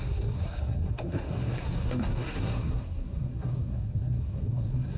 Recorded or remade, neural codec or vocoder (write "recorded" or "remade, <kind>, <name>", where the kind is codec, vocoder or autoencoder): remade, codec, SNAC